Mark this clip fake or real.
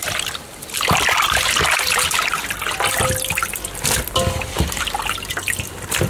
real